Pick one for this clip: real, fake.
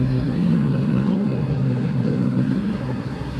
fake